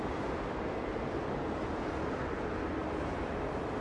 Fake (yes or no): no